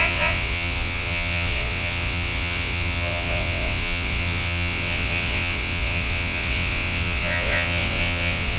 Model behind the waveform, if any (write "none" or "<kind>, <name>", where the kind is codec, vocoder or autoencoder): vocoder, WaveNeXt